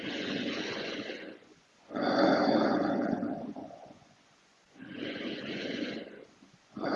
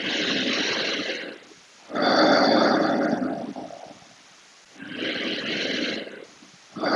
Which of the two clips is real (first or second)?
second